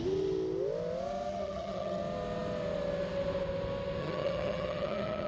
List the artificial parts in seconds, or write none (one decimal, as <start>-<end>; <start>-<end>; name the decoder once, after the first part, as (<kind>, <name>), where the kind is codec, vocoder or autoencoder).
1.3-2.0 (vocoder, HiFi-GAN); 4.0-5.3